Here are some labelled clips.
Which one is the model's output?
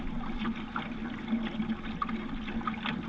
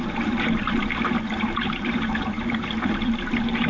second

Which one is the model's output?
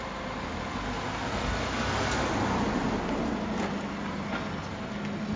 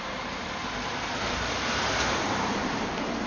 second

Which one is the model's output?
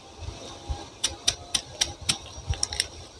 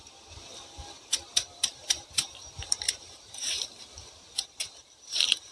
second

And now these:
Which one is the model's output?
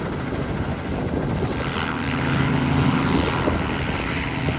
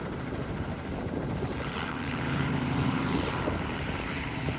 second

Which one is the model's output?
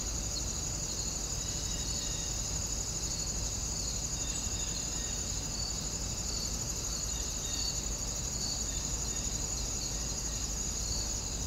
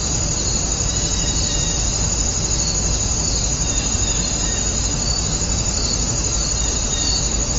first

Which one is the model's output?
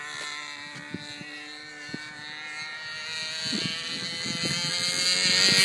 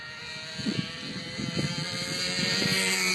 second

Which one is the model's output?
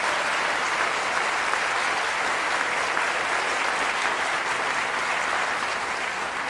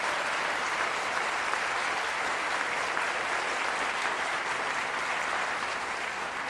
second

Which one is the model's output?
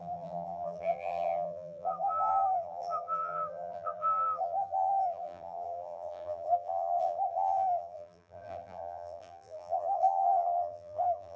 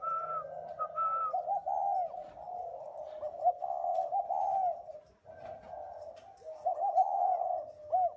first